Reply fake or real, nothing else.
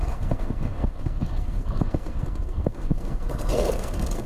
fake